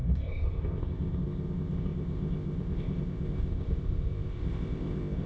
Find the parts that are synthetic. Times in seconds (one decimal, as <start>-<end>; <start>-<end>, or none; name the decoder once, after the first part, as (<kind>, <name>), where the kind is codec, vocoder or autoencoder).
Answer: 0.0-5.3 (codec, ZipCodec)